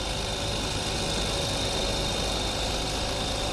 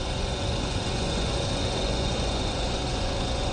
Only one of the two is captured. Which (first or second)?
first